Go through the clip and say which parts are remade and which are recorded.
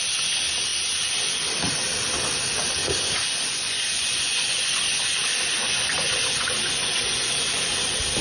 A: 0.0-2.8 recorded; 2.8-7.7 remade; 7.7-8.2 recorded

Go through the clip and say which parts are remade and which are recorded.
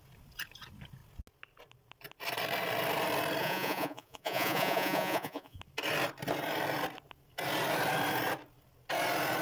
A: 0.0-3.4 recorded; 3.4-5.6 remade; 5.6-9.4 recorded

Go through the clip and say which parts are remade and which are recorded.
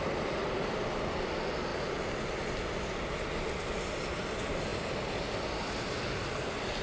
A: 0.0-6.8 recorded